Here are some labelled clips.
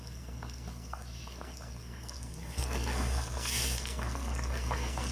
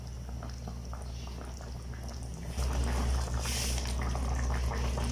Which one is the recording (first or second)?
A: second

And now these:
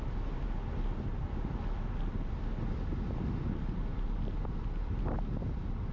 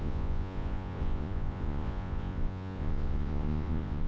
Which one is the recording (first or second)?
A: first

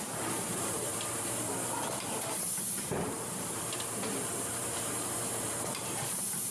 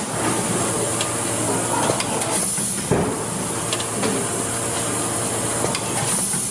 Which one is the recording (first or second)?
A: second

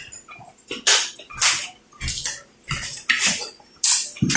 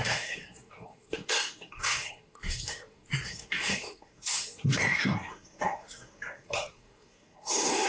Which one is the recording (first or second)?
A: first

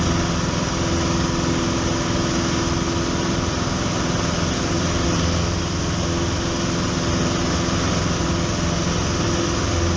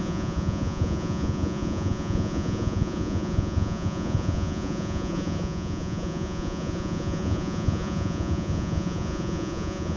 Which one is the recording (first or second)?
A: first